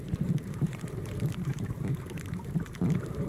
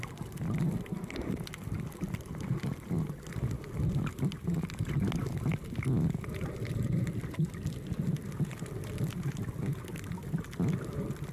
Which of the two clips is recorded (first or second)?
second